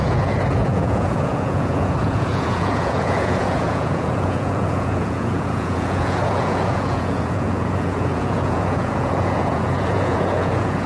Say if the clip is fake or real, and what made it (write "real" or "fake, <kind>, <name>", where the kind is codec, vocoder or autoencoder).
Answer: fake, vocoder, Vocos